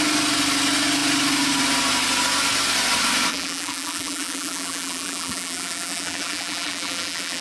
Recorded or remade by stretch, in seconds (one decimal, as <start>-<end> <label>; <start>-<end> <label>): 0.0-3.3 recorded; 3.3-7.4 remade